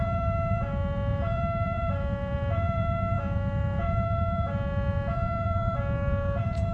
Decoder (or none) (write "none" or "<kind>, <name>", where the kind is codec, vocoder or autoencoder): vocoder, Vocos